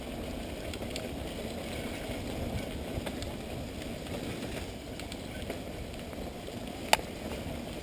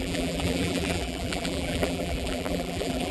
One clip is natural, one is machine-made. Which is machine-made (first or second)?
second